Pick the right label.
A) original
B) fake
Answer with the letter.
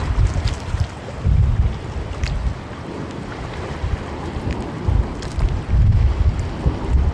A